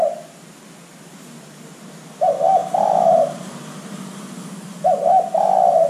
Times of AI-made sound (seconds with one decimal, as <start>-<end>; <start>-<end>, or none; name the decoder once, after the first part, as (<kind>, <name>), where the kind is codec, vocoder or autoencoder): none